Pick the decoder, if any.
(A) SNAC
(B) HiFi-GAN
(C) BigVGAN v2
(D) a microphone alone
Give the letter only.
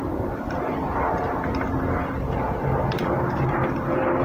C